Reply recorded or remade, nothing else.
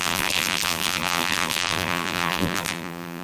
remade